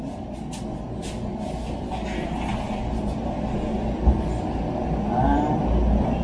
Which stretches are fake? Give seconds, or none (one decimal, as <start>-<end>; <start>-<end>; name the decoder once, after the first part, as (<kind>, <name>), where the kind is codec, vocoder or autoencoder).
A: none